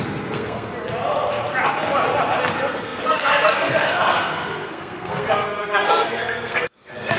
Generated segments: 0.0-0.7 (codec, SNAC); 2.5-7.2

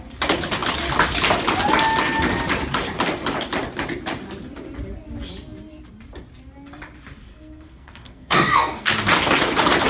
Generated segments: 7.3-8.9 (codec, SNAC)